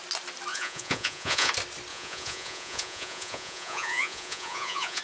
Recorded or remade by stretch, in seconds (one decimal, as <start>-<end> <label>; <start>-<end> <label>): 0.0-0.5 recorded; 0.5-1.5 remade; 1.5-1.9 recorded; 1.9-5.0 remade